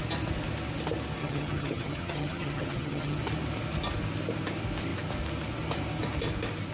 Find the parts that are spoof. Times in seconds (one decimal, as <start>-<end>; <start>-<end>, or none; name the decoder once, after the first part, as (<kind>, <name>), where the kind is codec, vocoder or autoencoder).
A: 1.2-3.2 (vocoder, HiFi-GAN)